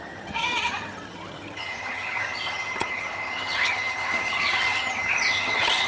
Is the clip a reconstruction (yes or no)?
yes